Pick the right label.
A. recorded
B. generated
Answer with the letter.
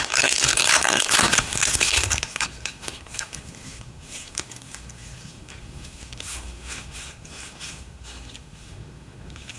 B